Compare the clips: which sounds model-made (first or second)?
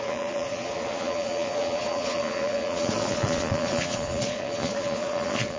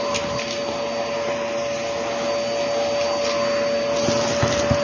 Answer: first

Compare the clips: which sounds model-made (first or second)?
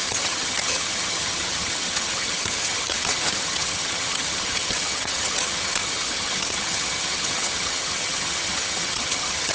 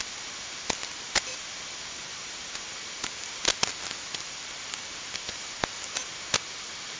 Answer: first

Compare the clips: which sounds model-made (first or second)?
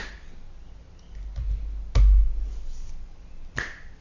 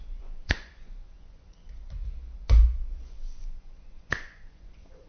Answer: second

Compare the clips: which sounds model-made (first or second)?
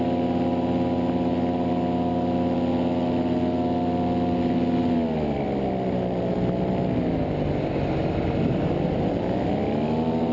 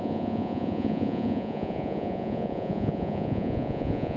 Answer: second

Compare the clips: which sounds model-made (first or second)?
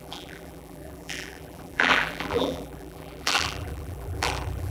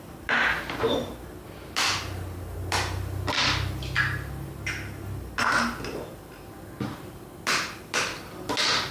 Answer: first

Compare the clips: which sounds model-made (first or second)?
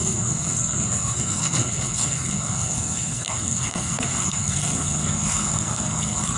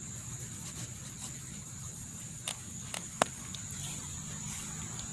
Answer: first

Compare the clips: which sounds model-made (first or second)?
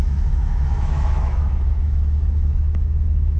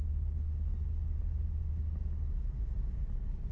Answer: first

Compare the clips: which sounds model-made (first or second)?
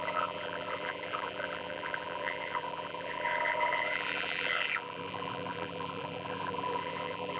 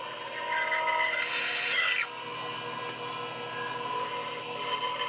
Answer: first